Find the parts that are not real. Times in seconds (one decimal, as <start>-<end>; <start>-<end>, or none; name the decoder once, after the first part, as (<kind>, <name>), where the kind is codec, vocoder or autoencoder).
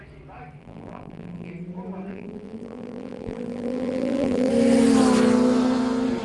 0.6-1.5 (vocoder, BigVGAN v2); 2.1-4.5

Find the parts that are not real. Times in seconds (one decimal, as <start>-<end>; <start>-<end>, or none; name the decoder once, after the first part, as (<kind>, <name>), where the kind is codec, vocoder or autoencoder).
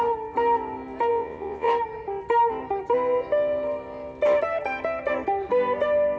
1.1-1.7 (vocoder, Vocos)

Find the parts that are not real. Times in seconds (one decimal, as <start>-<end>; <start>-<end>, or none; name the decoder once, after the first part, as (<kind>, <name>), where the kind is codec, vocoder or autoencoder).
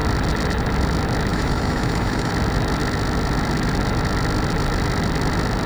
1.3-2.3 (autoencoder, DAC-VAE)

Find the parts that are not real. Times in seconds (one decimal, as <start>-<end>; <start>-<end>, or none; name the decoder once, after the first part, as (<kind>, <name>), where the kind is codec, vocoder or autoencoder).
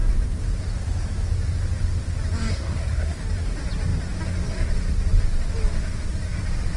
2.5-3.2 (codec, SNAC)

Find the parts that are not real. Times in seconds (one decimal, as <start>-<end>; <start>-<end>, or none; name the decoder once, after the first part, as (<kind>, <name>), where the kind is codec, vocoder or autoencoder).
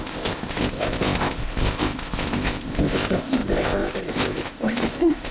0.0-5.3 (codec, ZipCodec)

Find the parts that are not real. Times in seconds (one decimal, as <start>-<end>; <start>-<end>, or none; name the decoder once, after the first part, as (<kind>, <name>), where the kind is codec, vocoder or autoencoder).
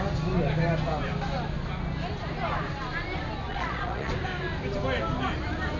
3.5-4.1 (vocoder, Vocos)